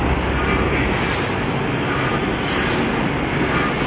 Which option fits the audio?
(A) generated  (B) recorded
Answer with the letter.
B